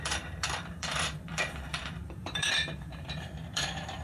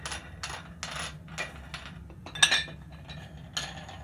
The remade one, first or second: first